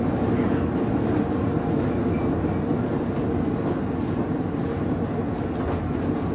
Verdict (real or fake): real